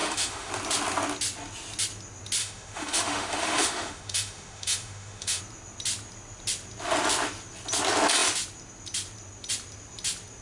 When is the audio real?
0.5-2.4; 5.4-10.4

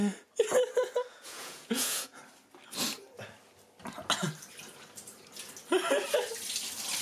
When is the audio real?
0.0-1.1; 2.2-7.0